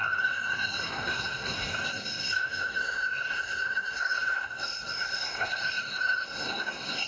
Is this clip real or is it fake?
fake